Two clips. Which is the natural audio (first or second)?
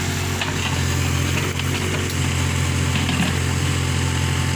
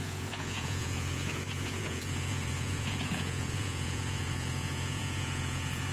first